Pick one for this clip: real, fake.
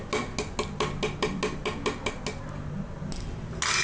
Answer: real